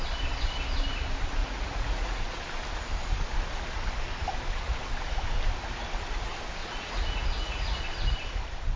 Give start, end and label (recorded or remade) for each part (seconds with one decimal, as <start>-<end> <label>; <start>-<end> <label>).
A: 0.0-1.4 recorded; 1.4-2.2 remade; 2.2-6.6 recorded; 6.6-7.8 remade; 7.8-8.8 recorded